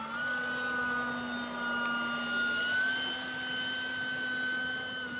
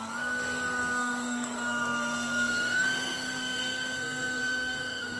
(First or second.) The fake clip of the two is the second